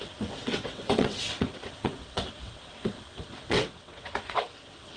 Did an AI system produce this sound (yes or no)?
yes